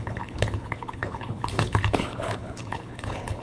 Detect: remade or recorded remade